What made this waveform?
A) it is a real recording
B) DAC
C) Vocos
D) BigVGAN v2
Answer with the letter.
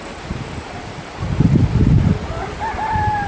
A